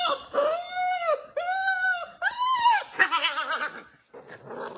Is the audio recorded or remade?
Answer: recorded